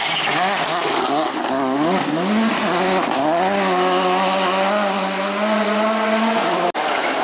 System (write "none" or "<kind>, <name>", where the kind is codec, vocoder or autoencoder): none